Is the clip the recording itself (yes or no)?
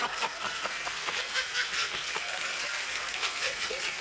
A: no